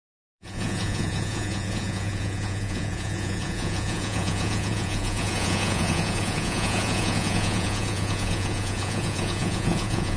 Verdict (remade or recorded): remade